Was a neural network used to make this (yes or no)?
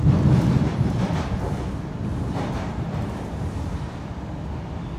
yes